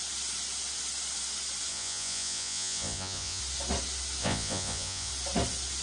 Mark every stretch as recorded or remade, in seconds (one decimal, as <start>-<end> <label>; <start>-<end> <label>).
0.0-1.7 recorded; 1.7-3.4 remade; 3.4-4.2 recorded; 4.2-5.1 remade; 5.1-5.8 recorded